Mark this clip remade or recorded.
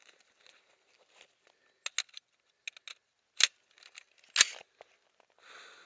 recorded